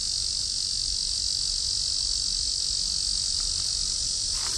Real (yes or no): yes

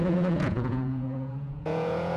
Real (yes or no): no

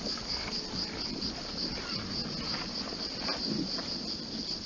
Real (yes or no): yes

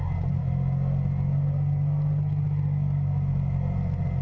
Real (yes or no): yes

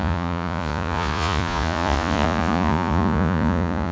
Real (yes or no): no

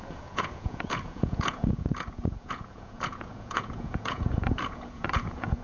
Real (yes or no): no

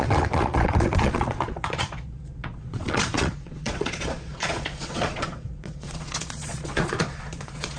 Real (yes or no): no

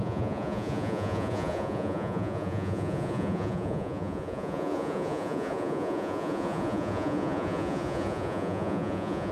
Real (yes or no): no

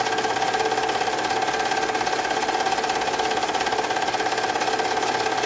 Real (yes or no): yes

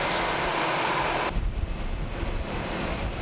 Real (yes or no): yes